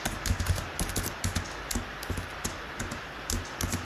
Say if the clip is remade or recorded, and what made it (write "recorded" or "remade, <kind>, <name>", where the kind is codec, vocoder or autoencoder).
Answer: recorded